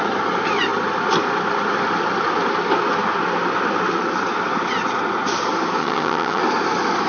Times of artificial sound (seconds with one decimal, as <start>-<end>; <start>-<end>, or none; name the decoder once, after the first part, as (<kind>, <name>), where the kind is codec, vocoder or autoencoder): 5.8-6.4 (vocoder, HiFi-GAN)